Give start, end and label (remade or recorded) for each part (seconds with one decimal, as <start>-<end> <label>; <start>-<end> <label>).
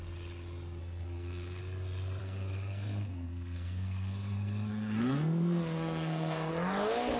0.0-0.8 recorded; 0.8-1.6 remade; 1.6-2.2 recorded; 2.2-6.5 remade; 6.5-7.2 recorded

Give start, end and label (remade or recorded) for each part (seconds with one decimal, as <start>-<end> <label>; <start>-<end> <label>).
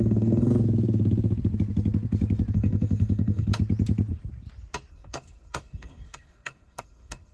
0.0-0.5 remade; 0.5-2.5 recorded; 2.5-3.5 remade; 3.5-4.9 recorded; 4.9-7.3 remade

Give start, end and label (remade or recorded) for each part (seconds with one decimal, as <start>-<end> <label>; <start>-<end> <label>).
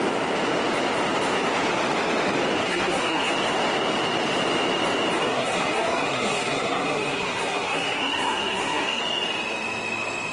0.0-2.6 recorded; 2.6-3.3 remade; 3.3-5.2 recorded; 5.2-9.0 remade; 9.0-10.3 recorded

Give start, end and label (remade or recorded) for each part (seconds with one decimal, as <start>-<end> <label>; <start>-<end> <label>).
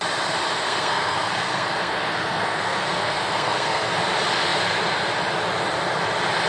0.0-0.5 recorded; 0.5-3.9 remade; 3.9-6.5 recorded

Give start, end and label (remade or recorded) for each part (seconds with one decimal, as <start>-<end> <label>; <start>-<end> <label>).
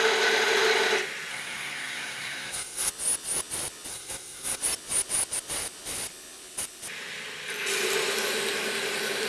0.0-1.3 recorded; 1.3-2.9 remade; 2.9-3.9 recorded; 3.9-4.6 remade; 4.6-9.3 recorded